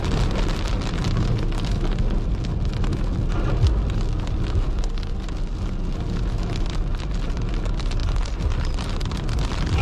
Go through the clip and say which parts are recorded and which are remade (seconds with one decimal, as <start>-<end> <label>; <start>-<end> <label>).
0.0-9.8 recorded